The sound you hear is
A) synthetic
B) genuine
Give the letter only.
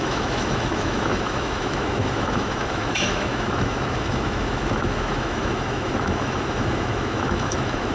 A